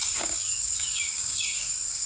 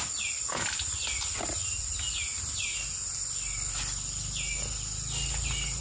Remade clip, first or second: first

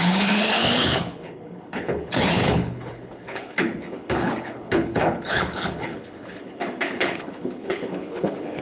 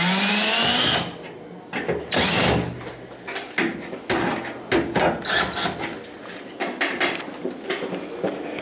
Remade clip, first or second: first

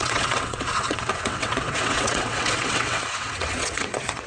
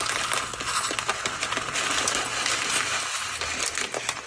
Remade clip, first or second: first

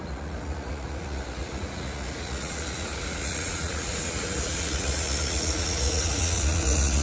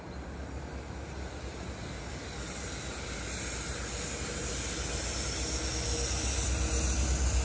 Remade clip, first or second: first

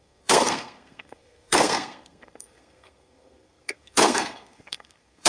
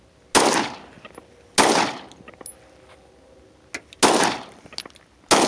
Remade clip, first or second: first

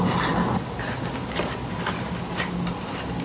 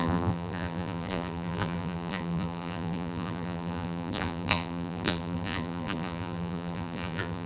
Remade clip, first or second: second